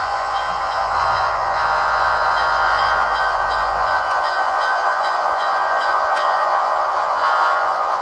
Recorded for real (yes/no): no